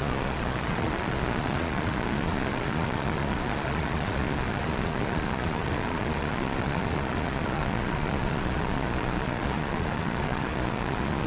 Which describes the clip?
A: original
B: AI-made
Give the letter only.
B